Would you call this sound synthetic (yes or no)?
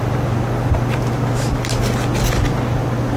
no